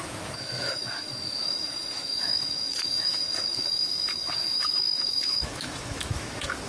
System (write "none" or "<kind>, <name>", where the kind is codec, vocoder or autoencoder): autoencoder, DAC-VAE